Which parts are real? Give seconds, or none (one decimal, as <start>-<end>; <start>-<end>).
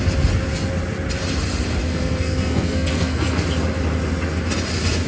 0.0-1.9; 3.4-5.1